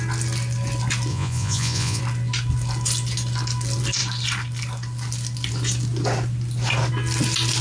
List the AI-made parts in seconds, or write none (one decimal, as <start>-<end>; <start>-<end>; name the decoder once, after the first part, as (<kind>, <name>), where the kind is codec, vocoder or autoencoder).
1.1-2.0 (vocoder, Vocos)